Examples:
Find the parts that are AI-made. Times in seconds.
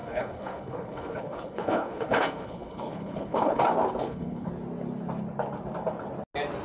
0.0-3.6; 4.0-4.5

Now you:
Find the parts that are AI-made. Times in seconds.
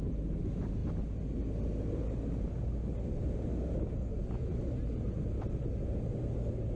none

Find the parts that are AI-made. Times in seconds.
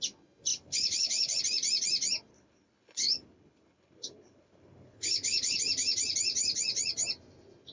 0.5-1.4; 2.3-5.6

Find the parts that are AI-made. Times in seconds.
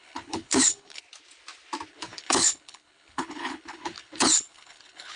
0.0-1.0; 1.9-5.2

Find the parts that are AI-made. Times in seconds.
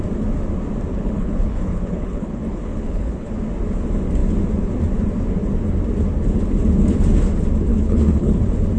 0.9-3.3; 7.7-8.4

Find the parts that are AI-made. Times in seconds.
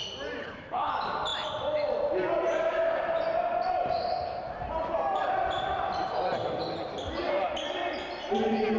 0.4-0.9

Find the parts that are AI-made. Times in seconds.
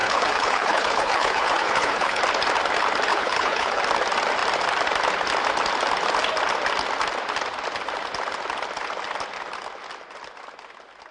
0.0-2.2; 3.1-3.8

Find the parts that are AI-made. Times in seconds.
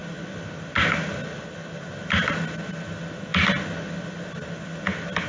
none